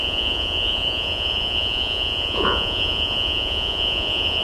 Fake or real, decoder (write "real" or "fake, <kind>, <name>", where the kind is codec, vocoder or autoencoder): fake, vocoder, Vocos